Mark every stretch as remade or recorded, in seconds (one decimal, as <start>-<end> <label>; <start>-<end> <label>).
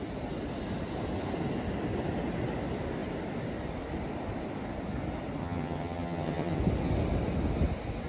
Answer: 0.0-5.4 recorded; 5.4-6.6 remade; 6.6-8.1 recorded